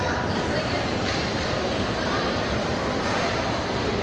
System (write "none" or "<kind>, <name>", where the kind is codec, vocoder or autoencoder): vocoder, BigVGAN v2